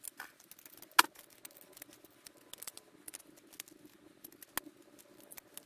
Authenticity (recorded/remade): recorded